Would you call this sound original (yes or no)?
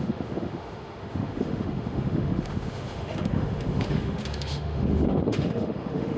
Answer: no